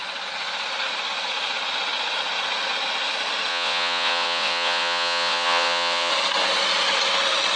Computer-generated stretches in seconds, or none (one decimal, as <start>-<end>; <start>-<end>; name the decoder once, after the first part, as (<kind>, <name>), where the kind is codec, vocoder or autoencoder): 3.5-6.1 (vocoder, WaveNeXt)

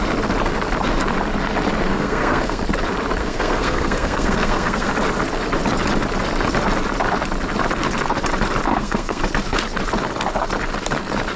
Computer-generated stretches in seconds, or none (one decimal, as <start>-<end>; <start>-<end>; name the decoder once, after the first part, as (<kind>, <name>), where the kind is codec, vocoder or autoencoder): 1.9-2.6 (codec, SNAC); 3.2-4.9; 8.7-9.2